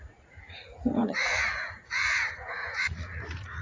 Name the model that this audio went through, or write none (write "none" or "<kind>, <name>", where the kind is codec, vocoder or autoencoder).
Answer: vocoder, Vocos